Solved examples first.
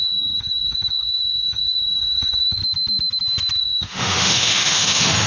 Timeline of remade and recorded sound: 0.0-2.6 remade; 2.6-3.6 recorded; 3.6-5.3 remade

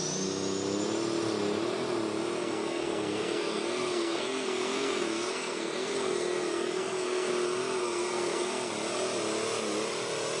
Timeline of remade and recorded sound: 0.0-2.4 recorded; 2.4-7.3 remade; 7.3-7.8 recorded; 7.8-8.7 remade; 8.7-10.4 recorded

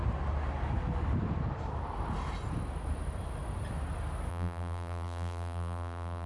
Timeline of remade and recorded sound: 0.0-4.3 recorded; 4.3-6.3 remade

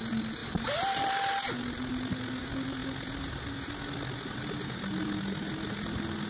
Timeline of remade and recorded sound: 0.0-0.4 recorded; 0.4-1.1 remade; 1.1-6.3 recorded

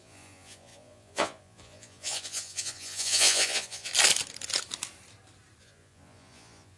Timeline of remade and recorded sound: 0.0-3.9 remade; 3.9-5.6 recorded; 5.6-6.8 remade

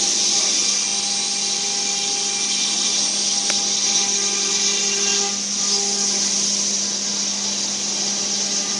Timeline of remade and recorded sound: 0.0-8.8 recorded

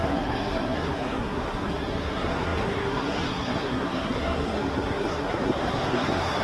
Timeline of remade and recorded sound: 0.0-6.4 remade